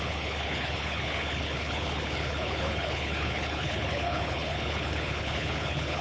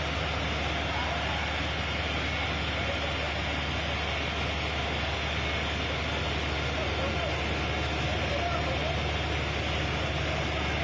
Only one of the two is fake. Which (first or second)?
first